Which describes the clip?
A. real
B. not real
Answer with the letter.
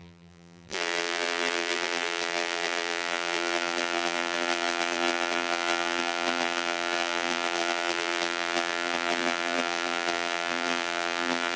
B